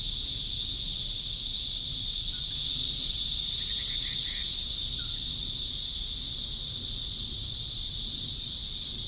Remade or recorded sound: recorded